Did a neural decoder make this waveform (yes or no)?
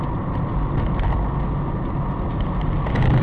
no